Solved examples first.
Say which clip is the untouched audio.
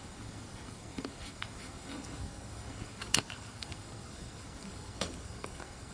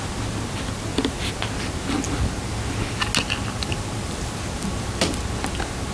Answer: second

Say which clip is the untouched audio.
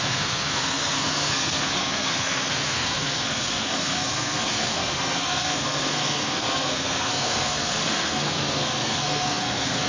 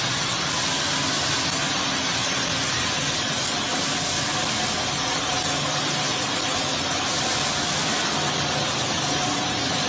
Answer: second